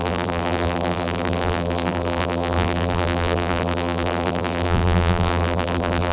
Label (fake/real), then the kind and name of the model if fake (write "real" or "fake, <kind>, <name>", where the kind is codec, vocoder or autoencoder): fake, vocoder, BigVGAN v2